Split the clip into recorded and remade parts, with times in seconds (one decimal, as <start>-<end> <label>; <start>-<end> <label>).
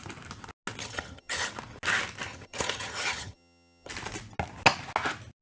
0.0-0.8 recorded; 0.8-1.5 remade; 1.5-2.3 recorded; 2.3-3.9 remade; 3.9-5.4 recorded